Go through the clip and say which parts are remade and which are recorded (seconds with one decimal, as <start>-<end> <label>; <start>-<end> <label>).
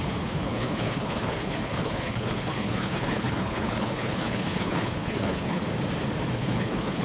0.0-5.6 remade; 5.6-6.3 recorded; 6.3-7.0 remade